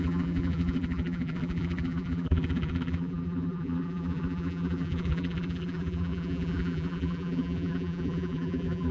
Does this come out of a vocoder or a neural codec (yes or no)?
yes